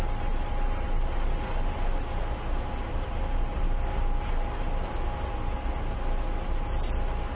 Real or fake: real